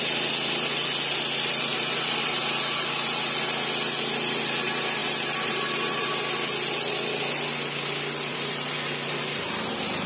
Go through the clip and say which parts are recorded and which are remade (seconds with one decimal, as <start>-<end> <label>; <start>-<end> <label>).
0.0-1.7 recorded; 1.7-2.4 remade; 2.4-5.0 recorded; 5.0-6.1 remade; 6.1-8.3 recorded; 8.3-9.2 remade; 9.2-10.1 recorded